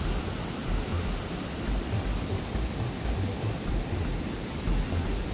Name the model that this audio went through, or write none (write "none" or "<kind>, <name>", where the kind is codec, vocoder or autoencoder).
vocoder, BigVGAN v2